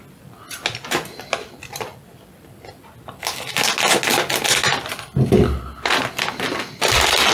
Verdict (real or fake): real